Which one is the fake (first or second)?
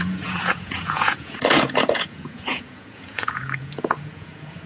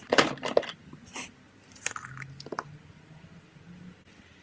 first